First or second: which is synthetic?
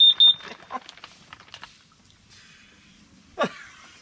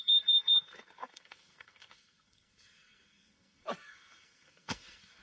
second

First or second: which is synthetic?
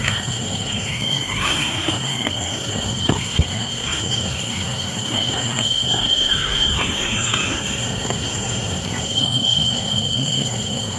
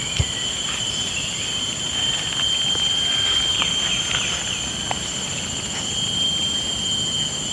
first